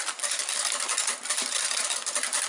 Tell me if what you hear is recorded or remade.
recorded